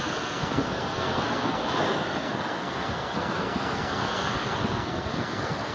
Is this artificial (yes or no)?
yes